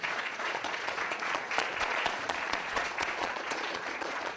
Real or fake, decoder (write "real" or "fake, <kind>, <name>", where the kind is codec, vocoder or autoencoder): fake, vocoder, Vocos